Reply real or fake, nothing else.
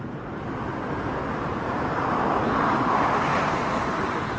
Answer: real